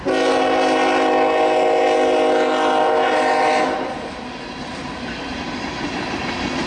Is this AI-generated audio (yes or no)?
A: no